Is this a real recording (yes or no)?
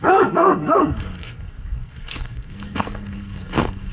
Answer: no